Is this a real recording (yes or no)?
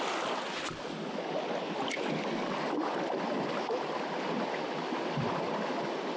yes